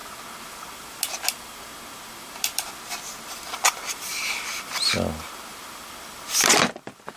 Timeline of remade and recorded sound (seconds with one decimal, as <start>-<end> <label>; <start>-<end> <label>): 0.0-7.2 recorded

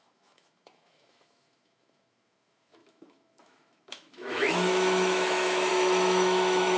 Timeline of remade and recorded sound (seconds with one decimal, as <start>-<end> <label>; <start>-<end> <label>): 0.0-6.8 remade

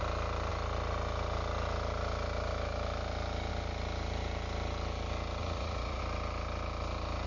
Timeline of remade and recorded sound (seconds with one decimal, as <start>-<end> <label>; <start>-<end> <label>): 0.0-5.4 recorded; 5.4-6.0 remade; 6.0-7.3 recorded

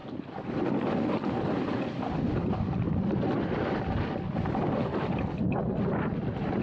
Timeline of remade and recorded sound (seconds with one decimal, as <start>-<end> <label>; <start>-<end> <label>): 0.0-6.6 recorded